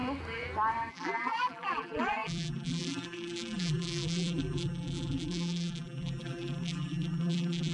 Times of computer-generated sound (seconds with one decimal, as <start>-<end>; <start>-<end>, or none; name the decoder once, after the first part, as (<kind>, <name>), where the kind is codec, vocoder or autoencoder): 0.9-7.7 (vocoder, BigVGAN v2)